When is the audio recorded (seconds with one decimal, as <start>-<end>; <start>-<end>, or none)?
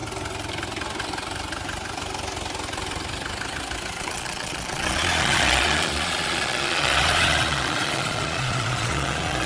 0.0-4.0